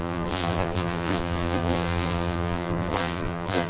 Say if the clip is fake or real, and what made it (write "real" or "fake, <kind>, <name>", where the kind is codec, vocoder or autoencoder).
fake, vocoder, BigVGAN v2